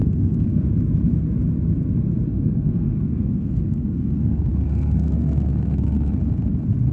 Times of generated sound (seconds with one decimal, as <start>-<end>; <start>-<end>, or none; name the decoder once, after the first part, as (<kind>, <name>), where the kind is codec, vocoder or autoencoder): 0.0-0.6 (codec, SNAC); 2.3-6.2